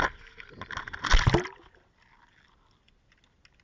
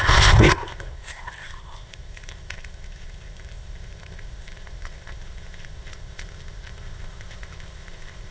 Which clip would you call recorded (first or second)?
first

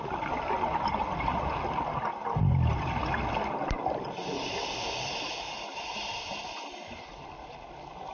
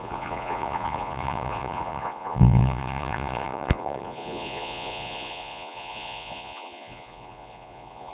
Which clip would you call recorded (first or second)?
first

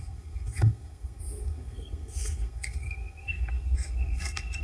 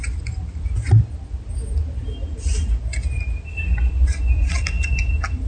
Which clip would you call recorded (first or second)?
second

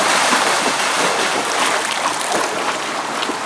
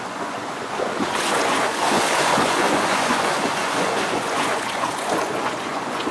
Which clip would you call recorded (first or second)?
first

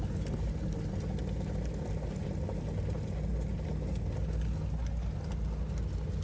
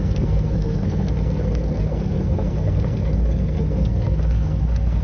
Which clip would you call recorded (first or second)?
first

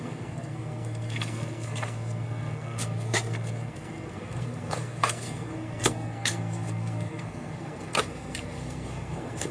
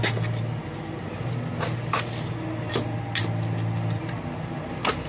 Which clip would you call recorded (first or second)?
second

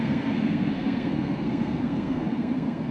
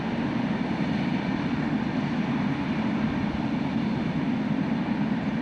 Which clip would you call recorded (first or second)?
second